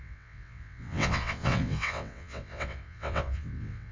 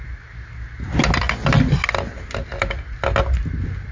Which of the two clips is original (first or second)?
second